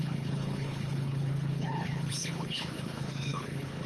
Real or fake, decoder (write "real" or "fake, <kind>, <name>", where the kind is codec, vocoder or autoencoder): fake, codec, HILCodec